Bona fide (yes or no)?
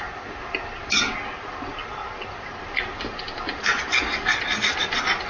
yes